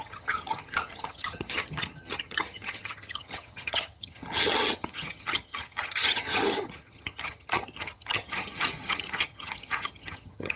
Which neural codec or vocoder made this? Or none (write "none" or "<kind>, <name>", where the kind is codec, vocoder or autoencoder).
vocoder, HiFi-GAN